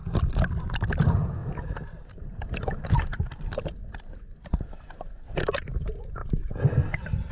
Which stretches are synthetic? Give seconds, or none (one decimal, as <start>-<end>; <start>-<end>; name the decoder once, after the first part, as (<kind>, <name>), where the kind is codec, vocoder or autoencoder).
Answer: 0.7-6.2 (vocoder, BigVGAN v2); 6.8-7.3